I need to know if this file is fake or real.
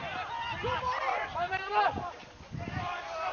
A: fake